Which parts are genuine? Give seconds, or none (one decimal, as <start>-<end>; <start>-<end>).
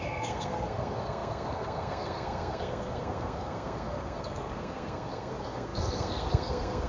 none